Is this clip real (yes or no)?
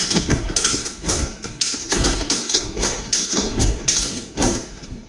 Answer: no